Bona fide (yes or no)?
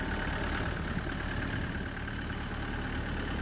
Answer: yes